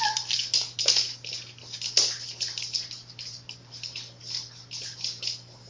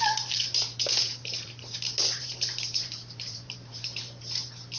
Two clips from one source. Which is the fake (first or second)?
second